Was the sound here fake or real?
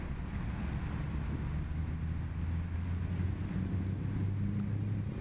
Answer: real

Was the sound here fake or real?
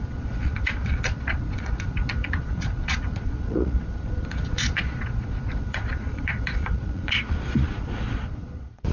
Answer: fake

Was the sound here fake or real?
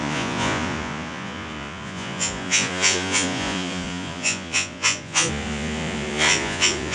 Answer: fake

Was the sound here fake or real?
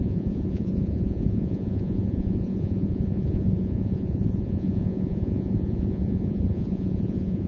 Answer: fake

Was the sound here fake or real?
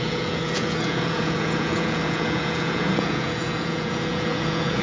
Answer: fake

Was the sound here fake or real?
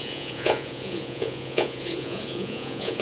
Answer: fake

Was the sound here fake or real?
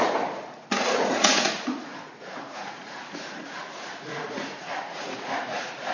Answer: fake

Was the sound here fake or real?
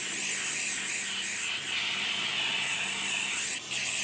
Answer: real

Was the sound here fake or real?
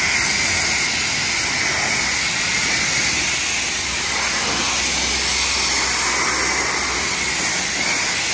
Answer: real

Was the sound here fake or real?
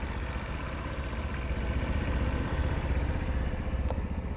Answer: real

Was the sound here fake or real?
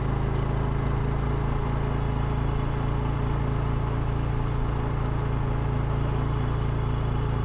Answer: real